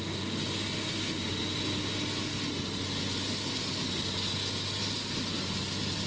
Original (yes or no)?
yes